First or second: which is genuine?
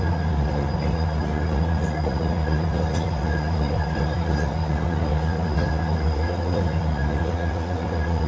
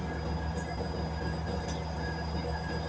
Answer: second